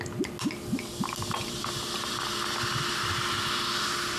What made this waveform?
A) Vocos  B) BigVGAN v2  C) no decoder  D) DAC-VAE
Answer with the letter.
C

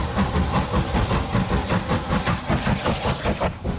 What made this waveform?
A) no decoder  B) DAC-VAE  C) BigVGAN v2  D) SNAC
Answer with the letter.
A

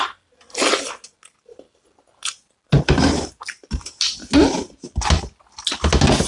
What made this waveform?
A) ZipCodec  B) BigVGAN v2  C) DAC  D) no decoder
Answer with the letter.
D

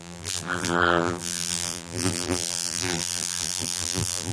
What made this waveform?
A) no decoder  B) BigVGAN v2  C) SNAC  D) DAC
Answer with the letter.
B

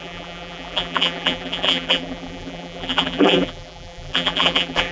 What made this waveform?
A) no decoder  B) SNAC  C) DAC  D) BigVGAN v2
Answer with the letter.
D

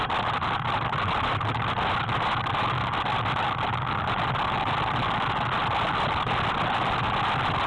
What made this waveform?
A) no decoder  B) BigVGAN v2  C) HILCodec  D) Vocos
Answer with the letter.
A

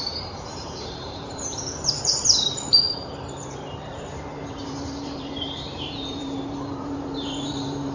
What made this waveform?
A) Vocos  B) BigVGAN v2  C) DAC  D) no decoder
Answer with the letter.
B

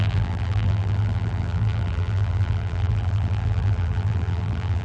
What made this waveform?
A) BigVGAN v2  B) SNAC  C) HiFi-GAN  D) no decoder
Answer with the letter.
A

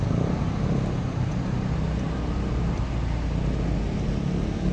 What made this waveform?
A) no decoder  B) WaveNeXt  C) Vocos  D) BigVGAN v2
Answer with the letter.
A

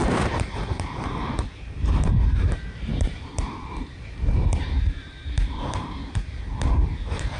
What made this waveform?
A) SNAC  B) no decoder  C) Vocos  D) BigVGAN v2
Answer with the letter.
D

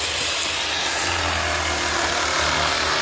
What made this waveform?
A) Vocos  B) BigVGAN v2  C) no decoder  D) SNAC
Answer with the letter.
C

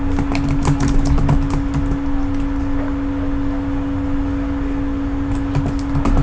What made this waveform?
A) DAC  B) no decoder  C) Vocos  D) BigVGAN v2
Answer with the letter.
B